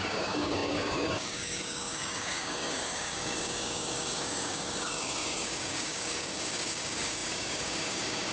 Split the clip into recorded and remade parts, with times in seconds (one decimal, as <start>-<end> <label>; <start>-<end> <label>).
0.0-8.3 remade